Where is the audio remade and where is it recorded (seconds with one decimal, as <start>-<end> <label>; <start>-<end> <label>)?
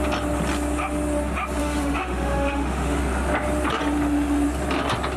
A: 0.0-1.6 recorded; 1.6-3.0 remade; 3.0-5.2 recorded